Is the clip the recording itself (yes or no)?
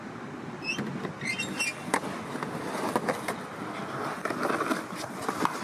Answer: yes